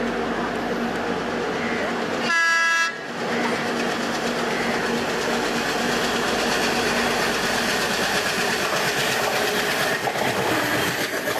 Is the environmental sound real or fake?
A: real